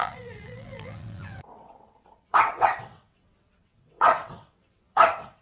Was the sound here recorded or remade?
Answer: remade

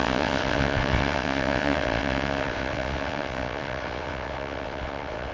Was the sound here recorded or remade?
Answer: remade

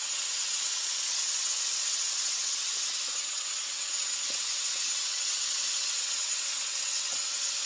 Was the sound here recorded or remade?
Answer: remade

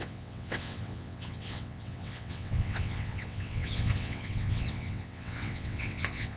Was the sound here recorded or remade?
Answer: remade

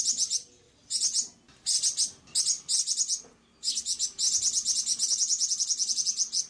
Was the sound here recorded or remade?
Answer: recorded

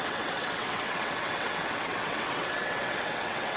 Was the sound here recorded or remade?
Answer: remade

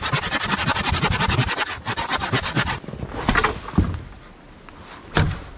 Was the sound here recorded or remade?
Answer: recorded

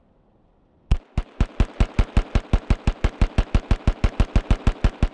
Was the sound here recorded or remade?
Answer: recorded